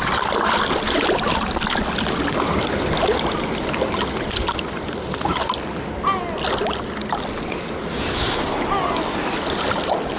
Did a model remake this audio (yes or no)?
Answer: no